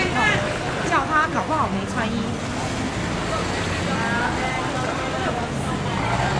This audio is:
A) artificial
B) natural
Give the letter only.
B